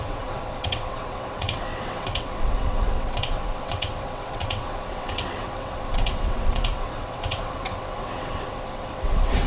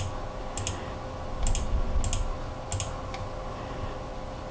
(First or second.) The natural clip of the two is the second